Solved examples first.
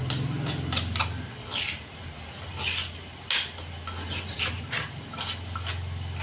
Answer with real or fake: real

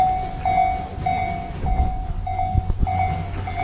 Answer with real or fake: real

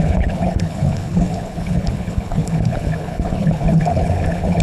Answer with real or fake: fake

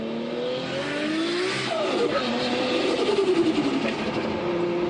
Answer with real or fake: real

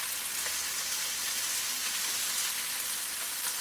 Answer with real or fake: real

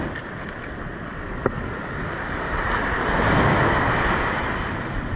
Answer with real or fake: real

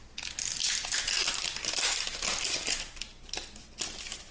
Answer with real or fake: real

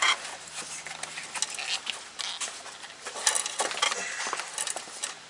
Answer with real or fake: real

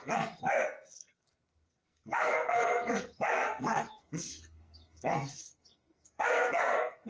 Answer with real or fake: fake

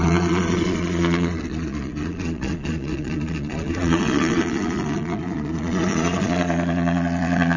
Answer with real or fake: fake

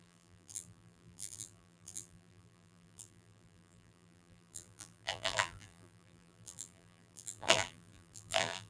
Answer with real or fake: fake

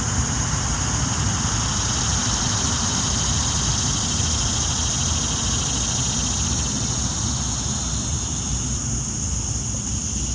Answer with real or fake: real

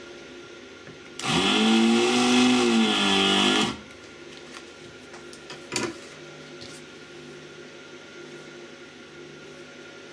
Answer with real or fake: real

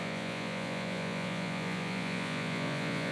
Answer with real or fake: fake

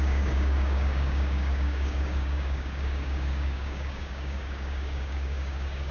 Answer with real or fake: fake